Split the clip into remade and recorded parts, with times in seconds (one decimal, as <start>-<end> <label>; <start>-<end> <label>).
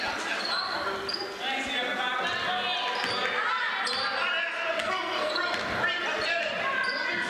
0.0-4.8 recorded; 4.8-5.3 remade; 5.3-7.3 recorded